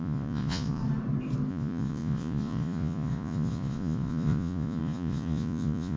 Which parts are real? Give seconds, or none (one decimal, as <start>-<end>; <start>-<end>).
0.8-1.5